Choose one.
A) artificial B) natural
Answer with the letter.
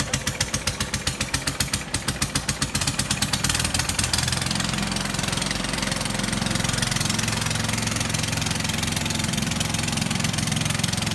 B